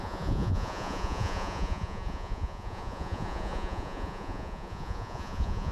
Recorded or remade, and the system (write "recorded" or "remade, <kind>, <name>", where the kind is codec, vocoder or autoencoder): remade, vocoder, Vocos